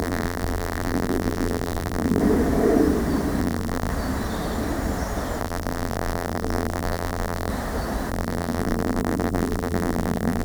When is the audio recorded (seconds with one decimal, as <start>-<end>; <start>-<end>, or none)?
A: 2.2-3.4; 3.9-5.4; 7.5-8.1

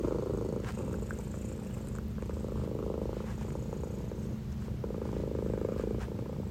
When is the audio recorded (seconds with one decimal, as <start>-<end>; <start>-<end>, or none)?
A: 0.0-6.5

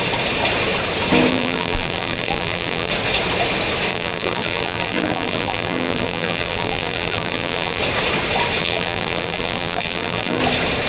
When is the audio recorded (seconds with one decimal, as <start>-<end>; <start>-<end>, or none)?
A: 0.0-1.3; 2.9-3.9; 7.8-8.6; 10.4-10.9

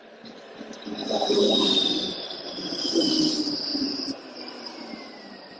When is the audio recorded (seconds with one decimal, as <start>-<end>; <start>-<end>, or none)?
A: 0.0-1.0; 3.1-3.7; 4.3-5.6

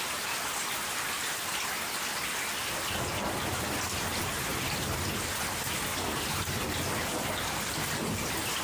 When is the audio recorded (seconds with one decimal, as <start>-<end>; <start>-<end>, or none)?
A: 0.0-8.6